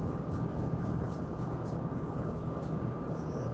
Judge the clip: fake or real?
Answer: fake